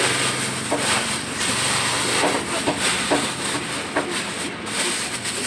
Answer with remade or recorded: recorded